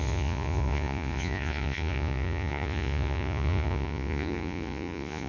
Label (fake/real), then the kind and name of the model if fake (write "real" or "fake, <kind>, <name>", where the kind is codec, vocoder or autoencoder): fake, vocoder, Vocos